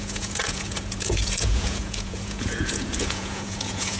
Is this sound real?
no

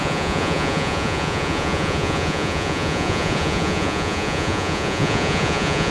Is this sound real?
no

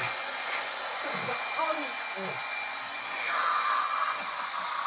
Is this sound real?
no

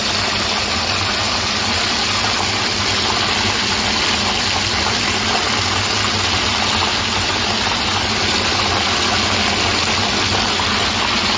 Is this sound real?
yes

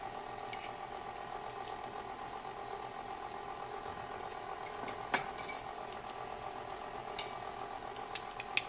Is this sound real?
yes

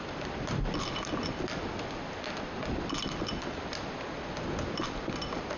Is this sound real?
yes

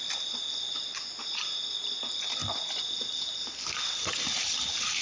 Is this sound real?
yes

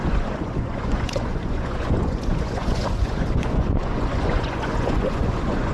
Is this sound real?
no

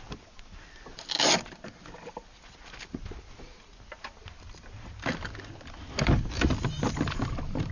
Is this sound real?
yes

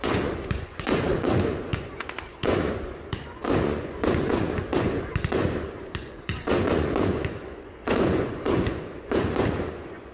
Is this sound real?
no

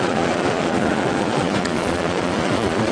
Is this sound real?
no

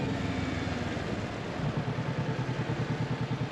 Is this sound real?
yes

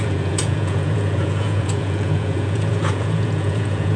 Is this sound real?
no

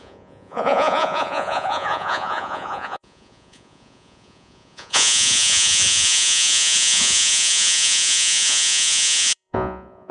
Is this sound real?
no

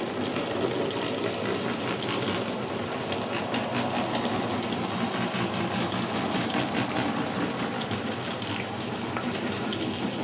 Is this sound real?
yes